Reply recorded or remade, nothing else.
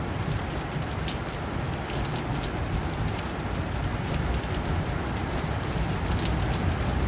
recorded